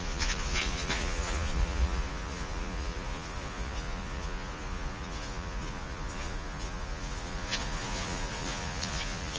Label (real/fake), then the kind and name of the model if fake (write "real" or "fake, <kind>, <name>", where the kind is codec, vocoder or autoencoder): fake, vocoder, Vocos